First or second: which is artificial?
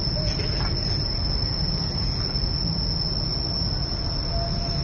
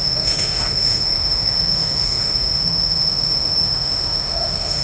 second